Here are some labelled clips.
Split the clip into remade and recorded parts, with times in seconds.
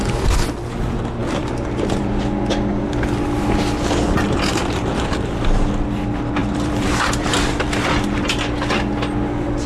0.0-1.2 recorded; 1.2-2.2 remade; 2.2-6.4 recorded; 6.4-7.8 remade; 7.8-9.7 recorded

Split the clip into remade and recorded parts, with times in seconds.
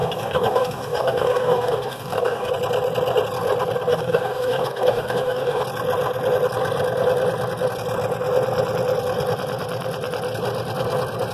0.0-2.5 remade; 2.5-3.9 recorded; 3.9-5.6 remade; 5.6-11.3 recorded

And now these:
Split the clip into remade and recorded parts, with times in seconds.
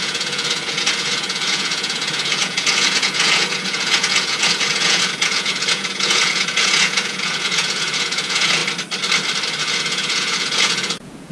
0.0-8.6 remade; 8.6-9.6 recorded; 9.6-11.3 remade